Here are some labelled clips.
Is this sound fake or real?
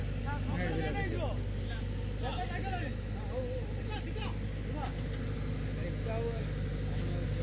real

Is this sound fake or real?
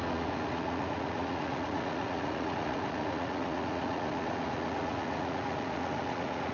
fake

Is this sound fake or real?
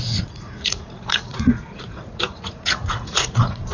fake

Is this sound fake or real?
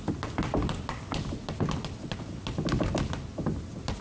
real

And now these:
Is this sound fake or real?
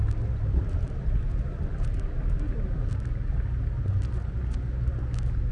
real